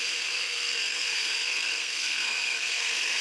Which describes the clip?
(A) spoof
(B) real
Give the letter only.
A